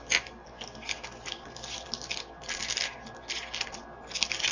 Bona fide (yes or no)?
yes